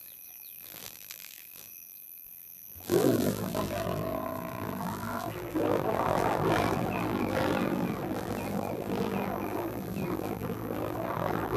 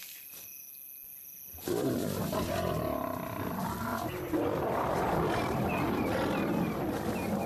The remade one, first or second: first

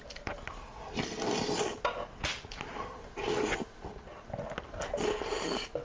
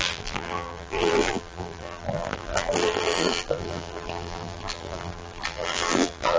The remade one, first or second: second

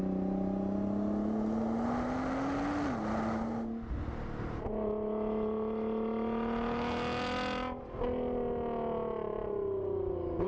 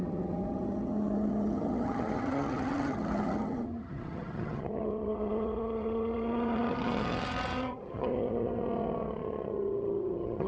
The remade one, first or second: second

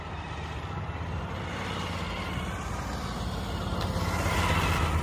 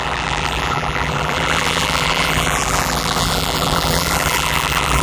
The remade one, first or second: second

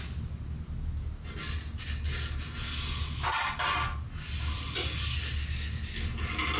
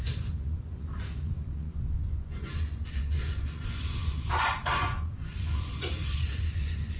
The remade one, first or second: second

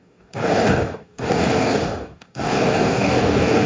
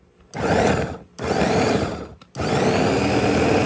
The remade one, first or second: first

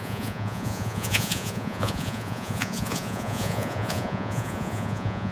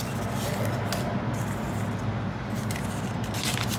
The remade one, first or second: first